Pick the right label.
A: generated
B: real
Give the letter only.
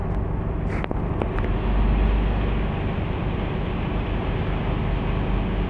B